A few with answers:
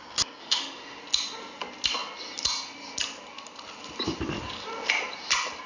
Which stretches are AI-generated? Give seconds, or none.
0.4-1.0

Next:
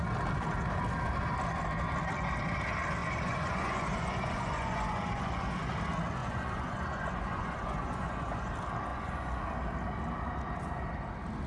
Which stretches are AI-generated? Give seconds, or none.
3.0-5.7; 6.2-8.5; 8.9-9.4

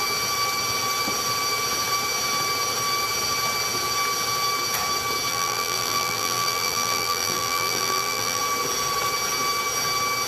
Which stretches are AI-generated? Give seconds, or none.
5.3-8.4